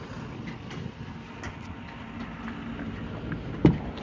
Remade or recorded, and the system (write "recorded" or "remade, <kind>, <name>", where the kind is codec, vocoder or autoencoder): recorded